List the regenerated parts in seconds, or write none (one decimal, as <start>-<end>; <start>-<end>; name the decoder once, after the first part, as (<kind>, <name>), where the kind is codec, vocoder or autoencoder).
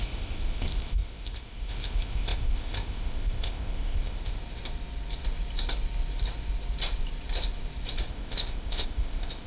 0.0-4.4 (codec, ZipCodec); 8.1-9.5